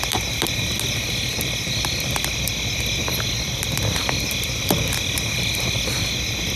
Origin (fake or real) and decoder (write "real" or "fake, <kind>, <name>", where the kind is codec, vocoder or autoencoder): real